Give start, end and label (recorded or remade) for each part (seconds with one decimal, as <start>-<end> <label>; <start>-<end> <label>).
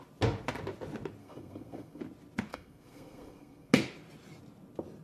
0.0-1.2 recorded; 1.2-2.0 remade; 2.0-2.5 recorded; 2.5-3.7 remade; 3.7-5.0 recorded